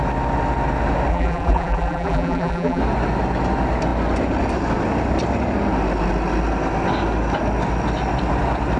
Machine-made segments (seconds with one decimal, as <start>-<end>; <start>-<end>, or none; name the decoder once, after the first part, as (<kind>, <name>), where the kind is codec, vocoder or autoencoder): 1.1-2.8 (vocoder, BigVGAN v2)